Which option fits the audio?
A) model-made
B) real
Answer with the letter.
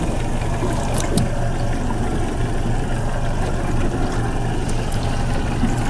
B